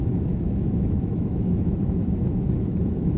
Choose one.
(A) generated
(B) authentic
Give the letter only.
A